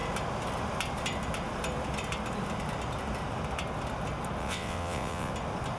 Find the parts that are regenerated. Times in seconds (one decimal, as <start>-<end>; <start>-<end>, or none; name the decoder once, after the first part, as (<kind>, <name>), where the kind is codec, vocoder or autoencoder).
4.4-5.3 (vocoder, WaveNeXt)